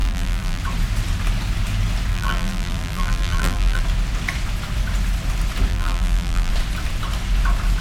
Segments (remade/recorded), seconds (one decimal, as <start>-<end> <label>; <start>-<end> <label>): 0.0-0.6 remade; 0.6-2.1 recorded; 2.1-3.8 remade; 3.8-5.7 recorded; 5.7-6.5 remade; 6.5-7.8 recorded